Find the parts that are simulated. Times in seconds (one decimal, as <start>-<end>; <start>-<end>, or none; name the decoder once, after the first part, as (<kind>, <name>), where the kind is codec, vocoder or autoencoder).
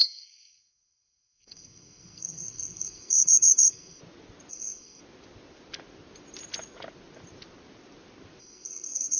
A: 0.0-4.0 (codec, SNAC); 4.5-5.0; 8.4-9.2